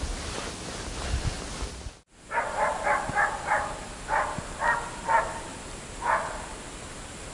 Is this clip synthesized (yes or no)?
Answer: no